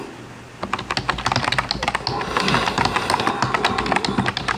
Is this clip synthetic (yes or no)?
no